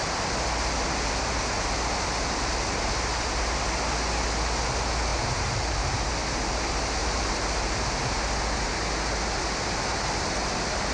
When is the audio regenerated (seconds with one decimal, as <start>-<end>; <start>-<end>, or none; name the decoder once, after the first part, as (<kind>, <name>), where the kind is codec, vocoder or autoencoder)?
5.1-6.1 (vocoder, BigVGAN v2); 7.0-7.5